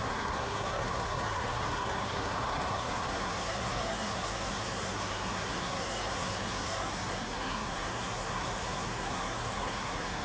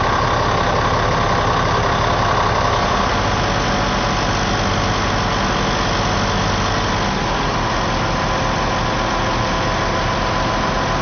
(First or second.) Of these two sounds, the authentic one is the second